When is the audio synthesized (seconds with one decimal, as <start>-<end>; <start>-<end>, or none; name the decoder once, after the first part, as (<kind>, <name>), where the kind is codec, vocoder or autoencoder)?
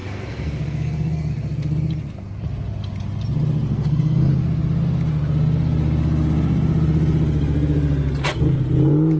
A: 0.0-1.3 (codec, SNAC); 3.7-4.3